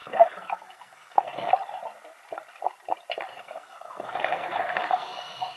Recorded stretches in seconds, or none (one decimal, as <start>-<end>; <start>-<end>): 1.5-3.3